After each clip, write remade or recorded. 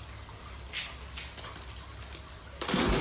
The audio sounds recorded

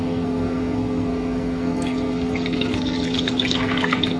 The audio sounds remade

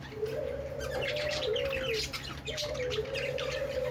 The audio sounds recorded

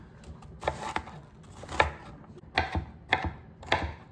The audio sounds recorded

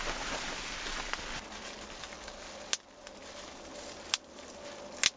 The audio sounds recorded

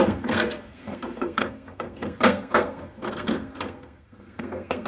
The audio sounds remade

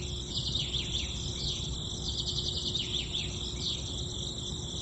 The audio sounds recorded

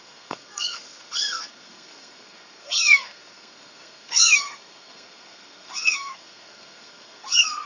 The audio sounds remade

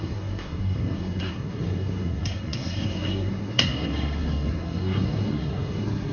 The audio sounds remade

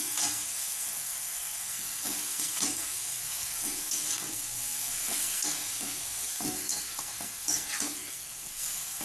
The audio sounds remade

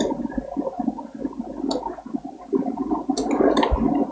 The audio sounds recorded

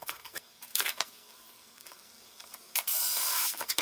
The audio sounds remade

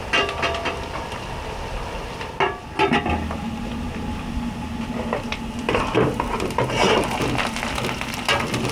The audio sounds recorded